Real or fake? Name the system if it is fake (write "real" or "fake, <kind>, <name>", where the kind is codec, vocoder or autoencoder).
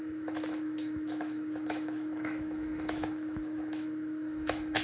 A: fake, autoencoder, DAC-VAE